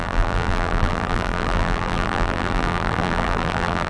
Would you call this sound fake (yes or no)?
yes